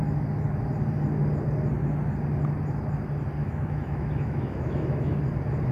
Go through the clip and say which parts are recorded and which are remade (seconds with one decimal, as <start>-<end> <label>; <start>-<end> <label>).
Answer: 0.0-3.4 recorded; 3.4-5.2 remade; 5.2-5.7 recorded